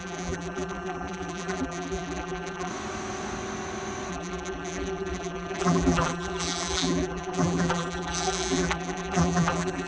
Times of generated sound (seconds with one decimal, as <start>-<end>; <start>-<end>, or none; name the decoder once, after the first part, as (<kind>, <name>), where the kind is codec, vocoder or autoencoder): 0.0-2.7 (vocoder, BigVGAN v2); 4.1-9.9